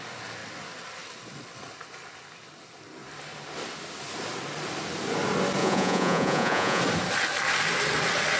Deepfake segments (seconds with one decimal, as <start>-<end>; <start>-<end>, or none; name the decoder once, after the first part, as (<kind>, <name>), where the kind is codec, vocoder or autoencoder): 5.6-6.8 (vocoder, Vocos)